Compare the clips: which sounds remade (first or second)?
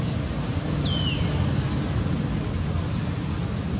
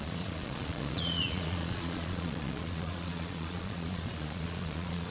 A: second